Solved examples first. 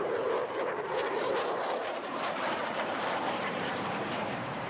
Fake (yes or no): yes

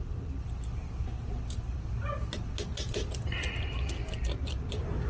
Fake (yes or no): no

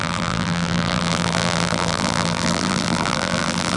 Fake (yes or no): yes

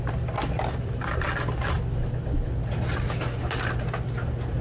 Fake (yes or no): no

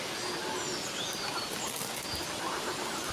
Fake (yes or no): no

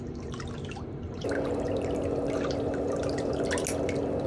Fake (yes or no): no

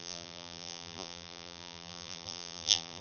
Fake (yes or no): yes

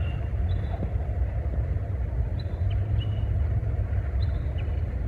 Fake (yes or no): no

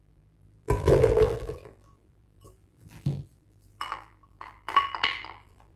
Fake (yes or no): yes